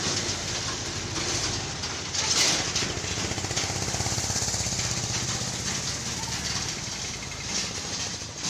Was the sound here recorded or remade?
recorded